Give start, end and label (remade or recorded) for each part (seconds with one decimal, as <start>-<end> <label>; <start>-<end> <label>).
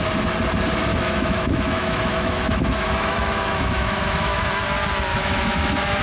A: 0.0-0.9 recorded; 0.9-4.5 remade; 4.5-5.1 recorded; 5.1-6.0 remade